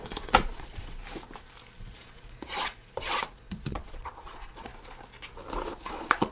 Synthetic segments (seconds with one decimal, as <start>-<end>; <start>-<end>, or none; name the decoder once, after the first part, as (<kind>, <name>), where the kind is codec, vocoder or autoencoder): 0.0-1.0 (vocoder, Vocos); 1.9-4.7; 5.5-6.3